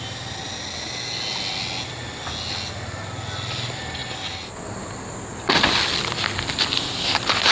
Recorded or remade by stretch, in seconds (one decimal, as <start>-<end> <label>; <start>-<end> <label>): 0.0-7.5 recorded